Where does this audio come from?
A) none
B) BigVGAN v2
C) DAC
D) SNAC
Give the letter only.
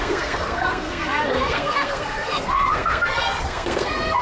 D